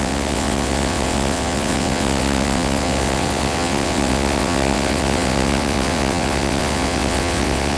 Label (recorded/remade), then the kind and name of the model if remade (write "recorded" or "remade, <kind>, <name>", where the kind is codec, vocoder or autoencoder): remade, vocoder, WaveNeXt